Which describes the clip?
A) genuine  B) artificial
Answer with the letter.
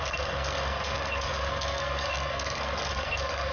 B